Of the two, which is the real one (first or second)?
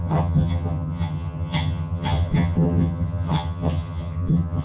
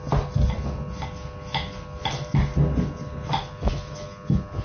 second